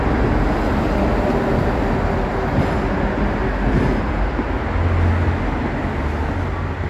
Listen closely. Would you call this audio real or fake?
real